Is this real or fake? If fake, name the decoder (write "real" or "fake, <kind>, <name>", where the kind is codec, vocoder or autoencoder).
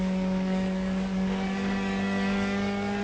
fake, codec, DAC